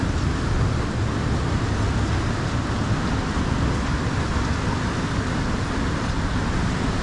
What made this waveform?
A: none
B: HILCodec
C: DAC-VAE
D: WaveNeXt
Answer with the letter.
A